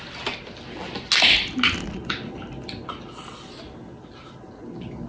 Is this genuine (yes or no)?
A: yes